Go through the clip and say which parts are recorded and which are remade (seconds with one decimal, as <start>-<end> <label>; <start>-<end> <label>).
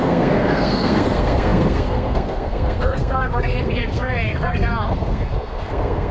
0.0-6.1 remade